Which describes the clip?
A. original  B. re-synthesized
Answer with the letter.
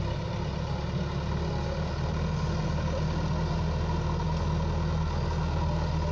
A